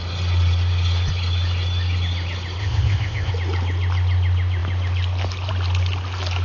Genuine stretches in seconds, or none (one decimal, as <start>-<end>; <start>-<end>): 0.0-2.6; 3.3-6.4